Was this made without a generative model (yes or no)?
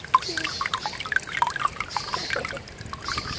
yes